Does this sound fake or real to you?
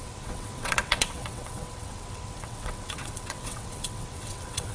fake